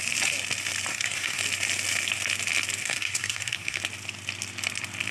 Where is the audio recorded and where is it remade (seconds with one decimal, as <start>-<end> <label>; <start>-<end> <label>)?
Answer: 0.0-0.9 recorded; 0.9-1.4 remade; 1.4-2.8 recorded; 2.8-3.8 remade; 3.8-5.1 recorded